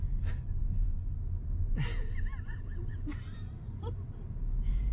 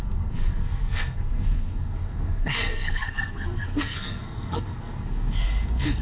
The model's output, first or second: second